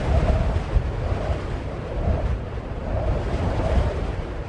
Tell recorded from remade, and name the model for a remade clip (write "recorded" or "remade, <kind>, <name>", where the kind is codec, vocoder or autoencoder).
recorded